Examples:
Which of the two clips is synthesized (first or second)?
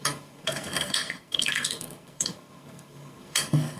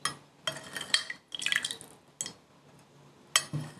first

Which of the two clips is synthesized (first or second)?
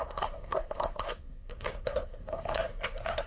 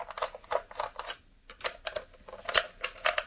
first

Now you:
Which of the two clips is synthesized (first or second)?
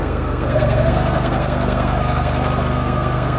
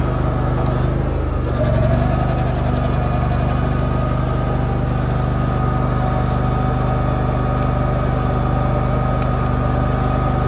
first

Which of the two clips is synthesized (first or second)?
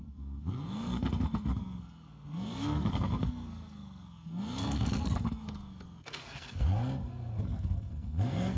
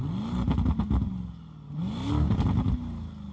first